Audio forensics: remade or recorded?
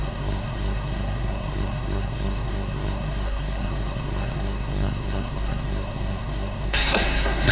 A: remade